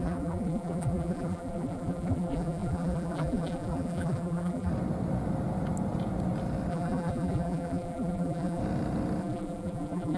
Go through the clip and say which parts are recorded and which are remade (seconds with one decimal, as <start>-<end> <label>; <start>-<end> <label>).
0.0-4.7 remade; 4.7-6.7 recorded; 6.7-8.6 remade; 8.6-9.2 recorded; 9.2-10.2 remade